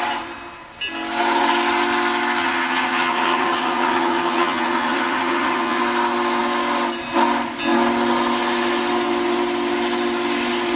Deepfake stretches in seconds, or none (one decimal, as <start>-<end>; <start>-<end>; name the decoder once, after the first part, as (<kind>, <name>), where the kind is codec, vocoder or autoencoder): 2.4-5.8 (vocoder, HiFi-GAN)